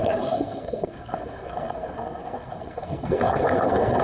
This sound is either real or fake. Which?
fake